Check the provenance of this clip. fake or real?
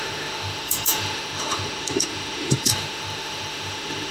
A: fake